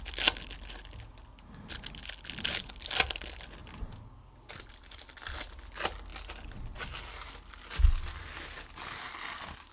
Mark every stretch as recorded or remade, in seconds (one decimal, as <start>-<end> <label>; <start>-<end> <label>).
0.0-9.7 recorded